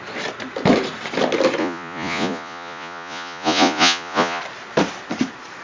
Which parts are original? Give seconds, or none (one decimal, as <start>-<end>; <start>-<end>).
0.0-1.6; 4.4-5.6